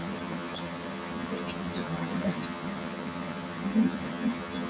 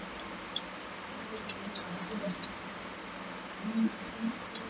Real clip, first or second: second